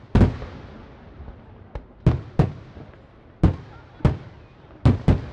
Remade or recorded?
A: recorded